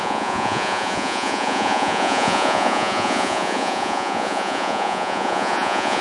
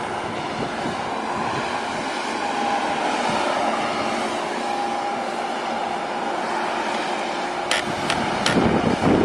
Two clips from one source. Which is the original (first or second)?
second